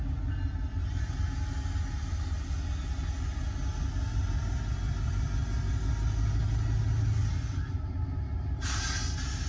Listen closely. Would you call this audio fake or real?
real